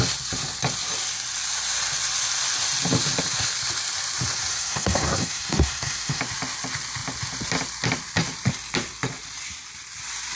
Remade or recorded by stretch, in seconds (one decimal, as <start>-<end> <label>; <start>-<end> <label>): 0.0-4.5 recorded; 4.5-6.2 remade; 6.2-10.4 recorded